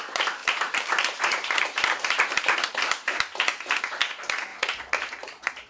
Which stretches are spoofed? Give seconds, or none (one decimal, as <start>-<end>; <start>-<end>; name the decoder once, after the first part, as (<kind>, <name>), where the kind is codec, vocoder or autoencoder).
0.0-4.5 (vocoder, BigVGAN v2); 5.2-5.7